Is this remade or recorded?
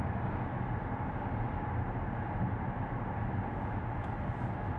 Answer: recorded